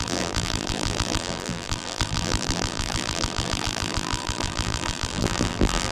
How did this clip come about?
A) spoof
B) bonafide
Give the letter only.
A